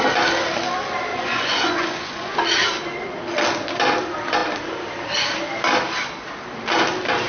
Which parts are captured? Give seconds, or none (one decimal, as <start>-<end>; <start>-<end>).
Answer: 0.0-1.1; 2.4-7.3